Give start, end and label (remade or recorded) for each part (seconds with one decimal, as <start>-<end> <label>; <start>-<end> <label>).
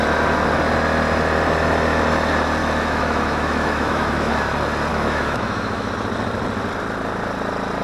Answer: 0.0-2.6 recorded; 2.6-4.3 remade; 4.3-4.9 recorded; 4.9-5.9 remade; 5.9-7.8 recorded